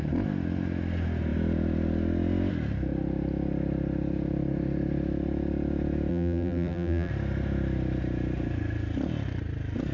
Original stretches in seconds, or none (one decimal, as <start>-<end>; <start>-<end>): 0.0-6.1; 7.1-9.9